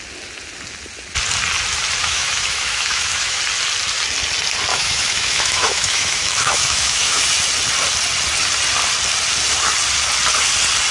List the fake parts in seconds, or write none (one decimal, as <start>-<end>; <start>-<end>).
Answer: 2.0-3.4; 4.7-7.3